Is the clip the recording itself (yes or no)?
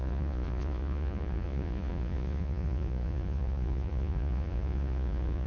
no